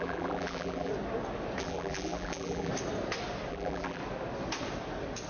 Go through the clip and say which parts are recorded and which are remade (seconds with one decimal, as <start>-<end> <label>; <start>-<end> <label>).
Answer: 0.0-0.9 remade; 0.9-1.6 recorded; 1.6-2.7 remade; 2.7-3.5 recorded; 3.5-4.0 remade; 4.0-5.3 recorded